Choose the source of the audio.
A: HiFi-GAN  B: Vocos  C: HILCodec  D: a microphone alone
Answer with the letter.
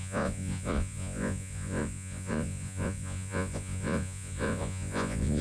B